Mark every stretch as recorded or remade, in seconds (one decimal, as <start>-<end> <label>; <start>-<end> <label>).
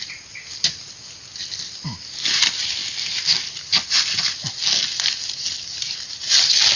0.0-6.8 recorded